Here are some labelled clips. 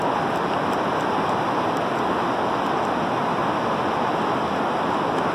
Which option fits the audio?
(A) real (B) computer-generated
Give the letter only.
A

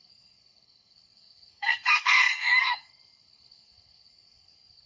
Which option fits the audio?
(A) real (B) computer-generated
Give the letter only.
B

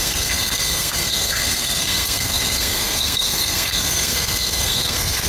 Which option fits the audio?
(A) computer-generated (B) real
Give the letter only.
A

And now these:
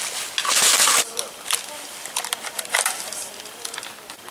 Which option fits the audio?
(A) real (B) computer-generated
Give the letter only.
A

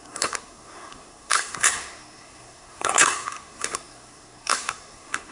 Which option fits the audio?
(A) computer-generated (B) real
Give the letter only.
A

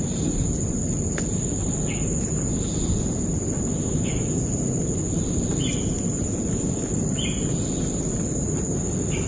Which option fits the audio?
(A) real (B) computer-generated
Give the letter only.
A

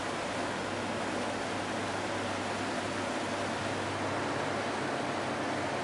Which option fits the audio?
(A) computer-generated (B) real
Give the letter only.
B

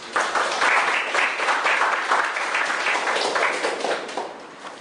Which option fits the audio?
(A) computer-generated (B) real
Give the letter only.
B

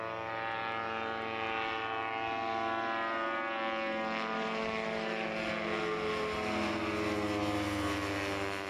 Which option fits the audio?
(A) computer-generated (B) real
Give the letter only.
B